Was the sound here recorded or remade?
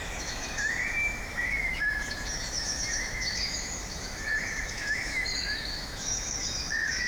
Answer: remade